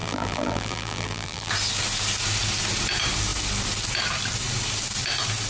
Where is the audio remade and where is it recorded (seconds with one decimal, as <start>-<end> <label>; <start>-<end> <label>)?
0.0-1.5 remade; 1.5-5.5 recorded